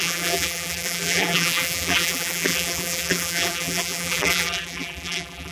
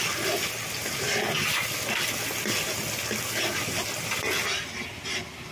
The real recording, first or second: second